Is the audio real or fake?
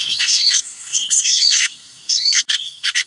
fake